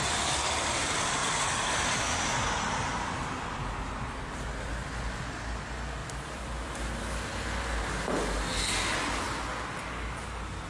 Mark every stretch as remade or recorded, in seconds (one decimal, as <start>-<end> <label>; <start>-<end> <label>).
0.0-6.0 recorded; 6.0-6.7 remade; 6.7-10.7 recorded